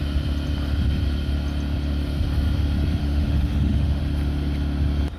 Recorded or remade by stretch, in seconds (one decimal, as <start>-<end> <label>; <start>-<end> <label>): 0.0-3.0 recorded; 3.0-4.0 remade; 4.0-5.2 recorded